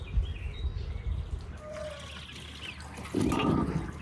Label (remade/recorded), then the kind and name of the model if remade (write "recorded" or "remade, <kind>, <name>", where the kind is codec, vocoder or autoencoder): recorded